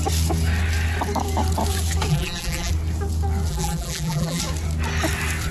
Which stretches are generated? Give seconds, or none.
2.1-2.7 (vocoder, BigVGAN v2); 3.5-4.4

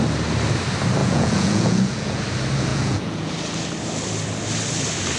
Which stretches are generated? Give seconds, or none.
1.0-2.2 (vocoder, Vocos); 2.7-3.3

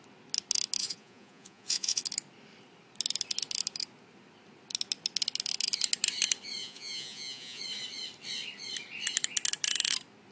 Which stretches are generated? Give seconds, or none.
0.8-2.0 (vocoder, Vocos); 6.6-7.6

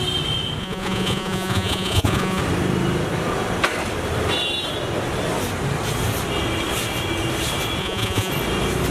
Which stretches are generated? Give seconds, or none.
0.6-2.4 (vocoder, Vocos); 7.8-8.3